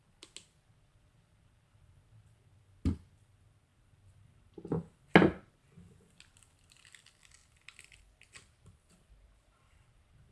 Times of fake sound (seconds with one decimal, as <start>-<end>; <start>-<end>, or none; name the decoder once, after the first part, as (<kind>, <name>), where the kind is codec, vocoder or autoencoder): none

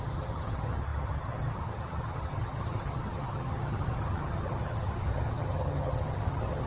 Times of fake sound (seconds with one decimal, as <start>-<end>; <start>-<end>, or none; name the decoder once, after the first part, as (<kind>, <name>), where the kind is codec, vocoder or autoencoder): 0.0-6.7 (vocoder, HiFi-GAN)

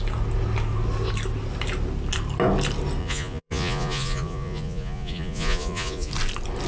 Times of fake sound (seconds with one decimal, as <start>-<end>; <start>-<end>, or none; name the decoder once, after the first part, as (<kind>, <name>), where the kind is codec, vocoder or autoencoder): 3.0-6.1 (vocoder, Vocos)

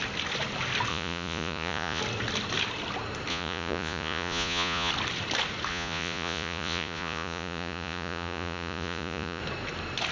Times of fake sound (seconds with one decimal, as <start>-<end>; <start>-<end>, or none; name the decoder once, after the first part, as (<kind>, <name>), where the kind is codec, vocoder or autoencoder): 0.9-2.0 (vocoder, Vocos); 3.3-4.9; 5.7-9.4

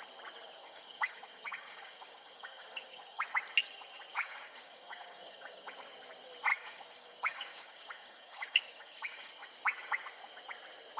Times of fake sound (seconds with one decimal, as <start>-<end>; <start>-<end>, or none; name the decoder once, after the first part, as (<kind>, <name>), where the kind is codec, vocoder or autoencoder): 0.6-3.3 (codec, DAC); 4.1-5.7; 6.5-9.3

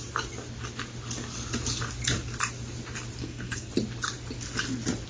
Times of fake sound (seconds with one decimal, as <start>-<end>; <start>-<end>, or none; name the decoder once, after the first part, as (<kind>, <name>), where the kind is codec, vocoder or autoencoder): 3.2-3.7 (codec, SNAC)

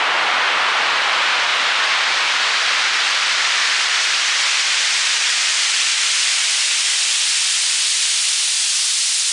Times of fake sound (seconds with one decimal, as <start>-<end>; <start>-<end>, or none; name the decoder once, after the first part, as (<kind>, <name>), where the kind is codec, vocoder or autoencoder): none